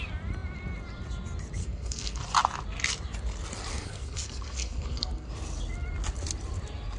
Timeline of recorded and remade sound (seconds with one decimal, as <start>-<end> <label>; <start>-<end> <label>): 0.0-1.6 recorded; 1.6-2.2 remade; 2.2-3.7 recorded; 3.7-5.3 remade; 5.3-7.0 recorded